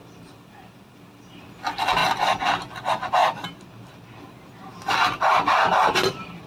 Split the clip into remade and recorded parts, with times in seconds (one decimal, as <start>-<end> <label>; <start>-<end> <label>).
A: 0.0-2.0 remade; 2.0-2.7 recorded; 2.7-6.5 remade